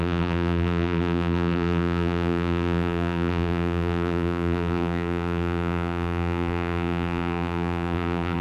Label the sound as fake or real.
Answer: fake